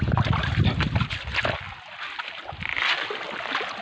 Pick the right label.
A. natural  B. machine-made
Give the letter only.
A